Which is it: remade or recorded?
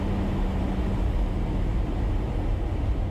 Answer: recorded